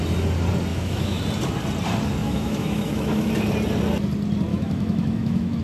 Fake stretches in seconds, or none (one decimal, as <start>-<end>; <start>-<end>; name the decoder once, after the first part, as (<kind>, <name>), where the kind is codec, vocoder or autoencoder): 0.7-1.2 (autoencoder, DAC-VAE); 2.2-3.3; 4.5-5.6